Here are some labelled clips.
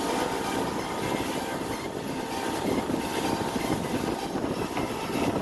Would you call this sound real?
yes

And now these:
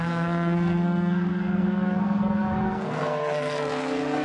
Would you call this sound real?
no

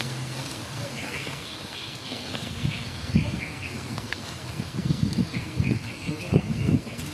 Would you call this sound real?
no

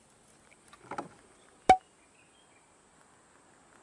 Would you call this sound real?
yes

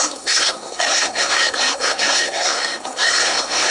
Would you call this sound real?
no